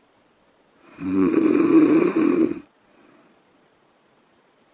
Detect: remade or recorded remade